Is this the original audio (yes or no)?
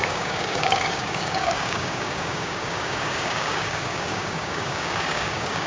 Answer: no